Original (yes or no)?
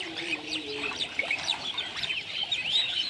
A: yes